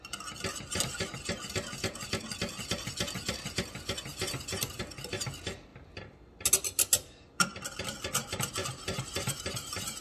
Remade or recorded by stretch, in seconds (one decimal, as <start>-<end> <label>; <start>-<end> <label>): 0.0-4.1 recorded; 4.1-4.8 remade; 4.8-8.6 recorded; 8.6-10.0 remade